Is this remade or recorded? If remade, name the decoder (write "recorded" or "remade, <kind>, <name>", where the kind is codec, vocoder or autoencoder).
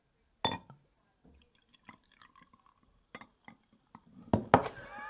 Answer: recorded